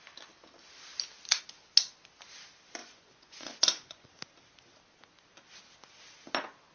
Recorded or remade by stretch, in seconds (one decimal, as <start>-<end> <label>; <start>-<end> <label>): 0.0-2.8 recorded; 2.8-4.1 remade; 4.1-6.7 recorded